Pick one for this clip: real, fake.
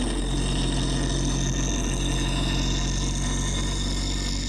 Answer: real